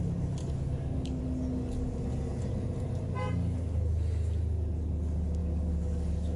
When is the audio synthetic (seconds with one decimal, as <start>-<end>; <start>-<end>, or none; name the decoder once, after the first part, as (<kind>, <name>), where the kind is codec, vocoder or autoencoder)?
0.4-1.2 (codec, DAC); 5.4-6.4